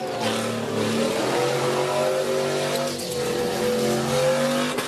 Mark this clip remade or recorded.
recorded